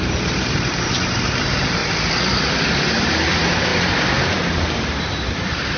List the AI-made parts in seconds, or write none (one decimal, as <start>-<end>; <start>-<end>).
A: 0.0-1.8; 2.5-3.7; 5.0-5.8